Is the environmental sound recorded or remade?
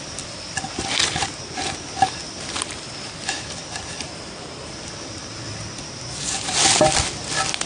recorded